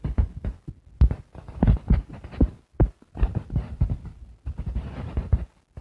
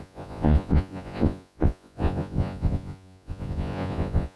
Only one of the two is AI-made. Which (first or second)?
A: second